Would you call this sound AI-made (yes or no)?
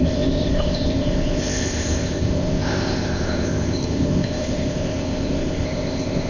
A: yes